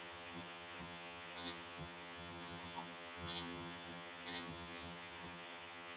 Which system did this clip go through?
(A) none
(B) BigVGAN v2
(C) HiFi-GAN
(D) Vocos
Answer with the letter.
C